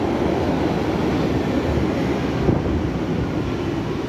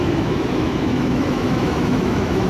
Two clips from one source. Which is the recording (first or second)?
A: first